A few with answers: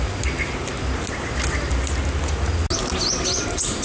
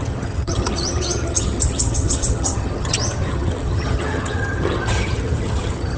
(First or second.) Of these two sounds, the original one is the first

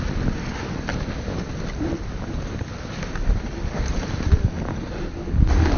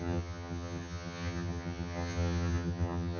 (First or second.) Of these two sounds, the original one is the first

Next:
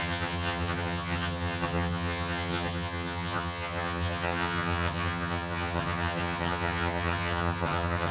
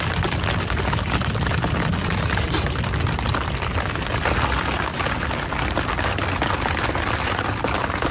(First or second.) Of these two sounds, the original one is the second